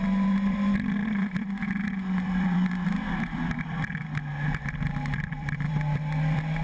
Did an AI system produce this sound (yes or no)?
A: yes